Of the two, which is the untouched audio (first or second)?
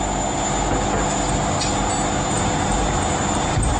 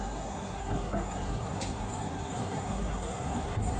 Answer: first